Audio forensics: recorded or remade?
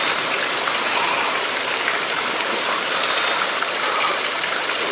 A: remade